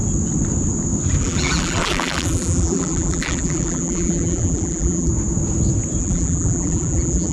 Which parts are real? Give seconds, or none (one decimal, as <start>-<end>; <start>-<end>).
0.0-1.2; 5.1-6.0